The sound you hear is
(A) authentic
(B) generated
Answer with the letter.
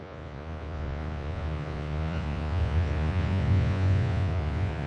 B